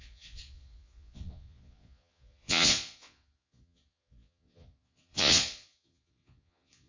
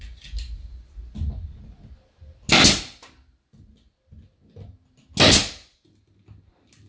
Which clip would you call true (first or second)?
second